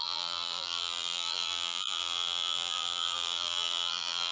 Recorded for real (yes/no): no